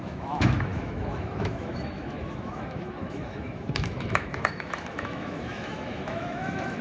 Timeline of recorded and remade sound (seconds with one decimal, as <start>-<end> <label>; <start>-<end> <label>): 0.0-6.8 remade